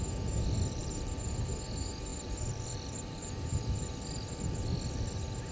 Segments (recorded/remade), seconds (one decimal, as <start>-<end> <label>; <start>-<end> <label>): 0.0-0.8 recorded; 0.8-1.5 remade; 1.5-2.1 recorded; 2.1-5.5 remade